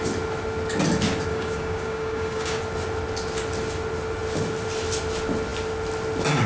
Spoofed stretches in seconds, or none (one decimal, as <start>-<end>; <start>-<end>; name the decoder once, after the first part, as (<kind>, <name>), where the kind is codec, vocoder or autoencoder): 1.3-2.6 (codec, DAC)